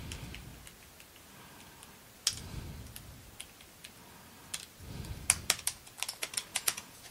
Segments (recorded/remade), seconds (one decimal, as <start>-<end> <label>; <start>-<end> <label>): 0.0-6.5 recorded; 6.5-7.1 remade